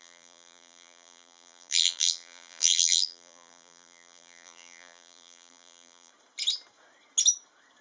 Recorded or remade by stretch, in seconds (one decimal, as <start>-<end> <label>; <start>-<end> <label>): 0.0-6.1 remade; 6.1-7.8 recorded